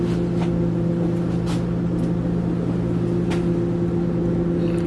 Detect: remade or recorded recorded